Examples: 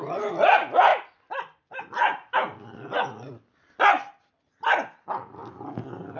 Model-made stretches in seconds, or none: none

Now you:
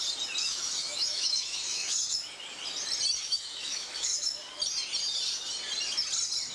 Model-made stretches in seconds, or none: 0.4-2.3 (autoencoder, DAC-VAE); 3.2-4.4